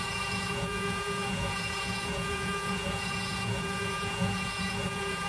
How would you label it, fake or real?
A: fake